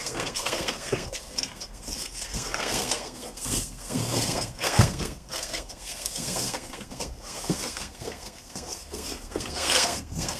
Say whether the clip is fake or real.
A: fake